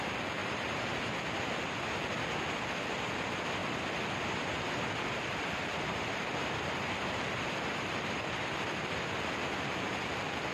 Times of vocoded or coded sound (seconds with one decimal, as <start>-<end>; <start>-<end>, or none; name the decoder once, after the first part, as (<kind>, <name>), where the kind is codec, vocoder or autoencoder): 0.4-1.0 (vocoder, BigVGAN v2); 3.6-8.0